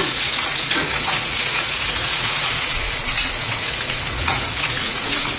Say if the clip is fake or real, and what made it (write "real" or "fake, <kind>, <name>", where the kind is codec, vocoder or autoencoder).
fake, vocoder, Vocos